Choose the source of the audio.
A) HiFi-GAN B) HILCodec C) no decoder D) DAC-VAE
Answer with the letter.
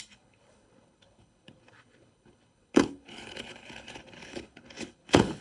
B